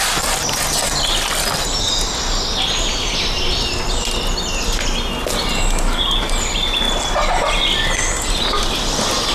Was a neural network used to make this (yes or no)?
no